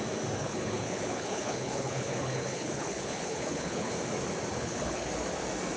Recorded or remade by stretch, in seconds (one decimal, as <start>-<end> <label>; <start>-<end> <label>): 0.0-0.4 recorded; 0.4-3.9 remade; 3.9-4.5 recorded; 4.5-5.1 remade; 5.1-5.8 recorded